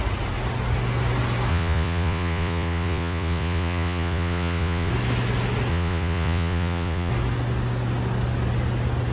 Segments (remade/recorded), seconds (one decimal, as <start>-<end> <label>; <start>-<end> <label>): 0.0-1.5 recorded; 1.5-4.9 remade; 4.9-5.7 recorded; 5.7-7.1 remade; 7.1-9.1 recorded